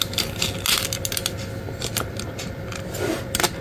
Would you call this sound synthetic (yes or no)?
no